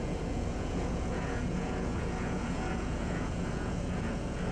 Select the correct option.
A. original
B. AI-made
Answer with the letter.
B